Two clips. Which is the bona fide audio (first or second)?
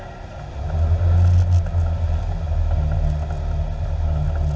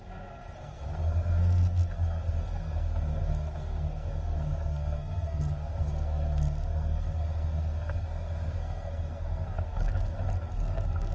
first